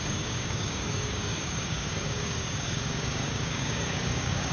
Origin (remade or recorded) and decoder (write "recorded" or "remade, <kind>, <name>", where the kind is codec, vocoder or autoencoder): remade, codec, DAC